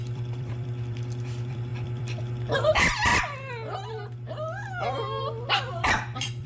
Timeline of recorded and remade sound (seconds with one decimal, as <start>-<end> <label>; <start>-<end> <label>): 0.0-3.1 remade; 3.1-5.7 recorded; 5.7-6.5 remade